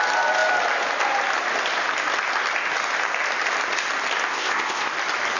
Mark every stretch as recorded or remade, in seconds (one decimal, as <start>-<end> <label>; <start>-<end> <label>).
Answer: 0.0-4.3 recorded; 4.3-4.9 remade; 4.9-5.4 recorded